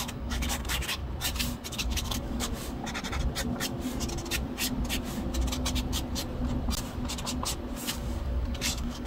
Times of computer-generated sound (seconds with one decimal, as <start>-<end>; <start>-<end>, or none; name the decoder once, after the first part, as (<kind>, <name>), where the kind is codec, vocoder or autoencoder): 0.0-1.0 (codec, DAC); 1.7-2.8; 7.9-9.1